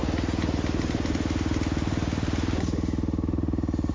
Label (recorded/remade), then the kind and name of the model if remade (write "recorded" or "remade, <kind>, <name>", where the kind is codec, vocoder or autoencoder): recorded